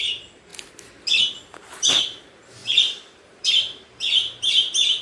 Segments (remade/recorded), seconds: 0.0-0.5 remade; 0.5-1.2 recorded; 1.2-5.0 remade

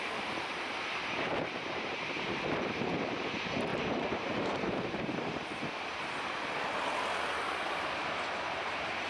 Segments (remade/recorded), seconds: 0.0-0.5 recorded; 0.5-2.9 remade; 2.9-3.7 recorded; 3.7-5.3 remade; 5.3-9.1 recorded

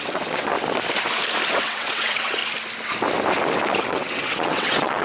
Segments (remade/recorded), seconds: 0.0-0.5 remade; 0.5-1.5 recorded; 1.5-2.4 remade; 2.4-3.8 recorded; 3.8-5.0 remade

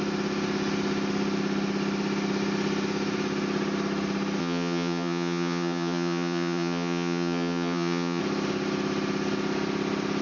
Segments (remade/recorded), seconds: 0.0-4.4 recorded; 4.4-8.2 remade; 8.2-10.2 recorded